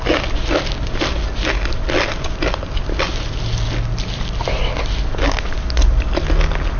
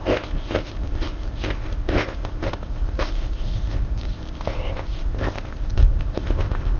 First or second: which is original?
first